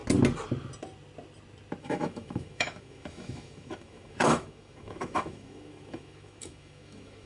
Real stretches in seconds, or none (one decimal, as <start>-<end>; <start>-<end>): 0.0-1.8